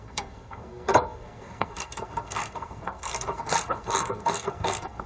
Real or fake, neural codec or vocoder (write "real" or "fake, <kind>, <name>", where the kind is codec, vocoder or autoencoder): fake, codec, SNAC